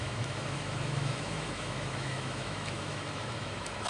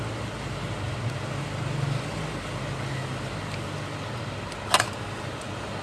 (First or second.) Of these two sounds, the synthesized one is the first